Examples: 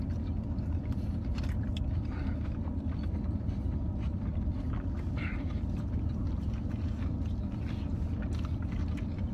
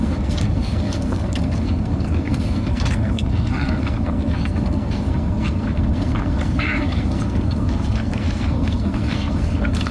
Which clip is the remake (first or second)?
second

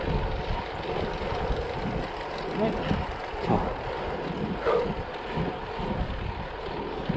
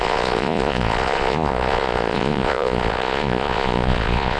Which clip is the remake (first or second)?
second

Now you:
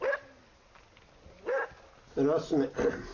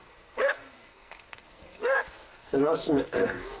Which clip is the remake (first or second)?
second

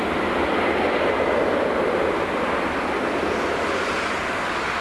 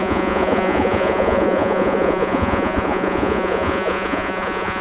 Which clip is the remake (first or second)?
second